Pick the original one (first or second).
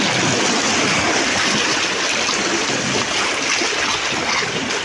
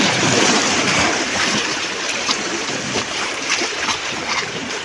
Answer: first